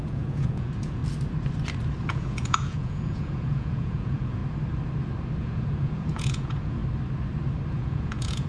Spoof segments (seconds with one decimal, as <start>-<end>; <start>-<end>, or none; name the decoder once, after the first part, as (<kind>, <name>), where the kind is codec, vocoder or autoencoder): 0.0-1.0 (vocoder, Vocos); 2.1-4.4; 5.4-6.8; 7.7-8.5